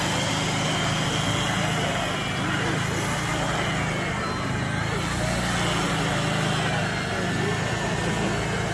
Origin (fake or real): real